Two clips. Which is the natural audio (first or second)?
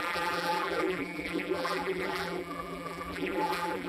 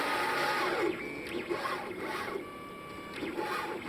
second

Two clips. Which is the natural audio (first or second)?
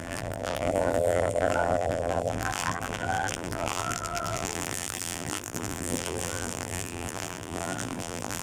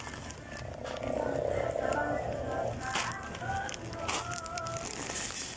second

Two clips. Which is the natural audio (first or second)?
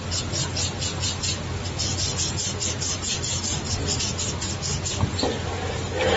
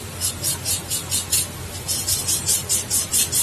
first